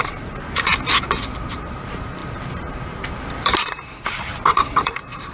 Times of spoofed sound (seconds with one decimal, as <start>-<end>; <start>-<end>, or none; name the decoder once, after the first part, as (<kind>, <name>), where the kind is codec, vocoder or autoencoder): 0.0-0.7 (vocoder, BigVGAN v2); 1.5-5.3